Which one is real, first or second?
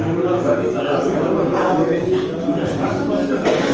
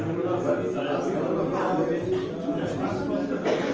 second